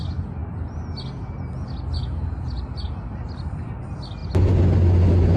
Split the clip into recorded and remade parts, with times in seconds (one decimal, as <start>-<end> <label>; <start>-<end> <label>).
0.0-5.4 recorded